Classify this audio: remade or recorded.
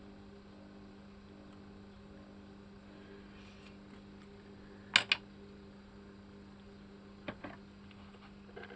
recorded